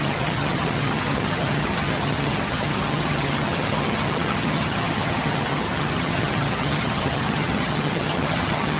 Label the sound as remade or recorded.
remade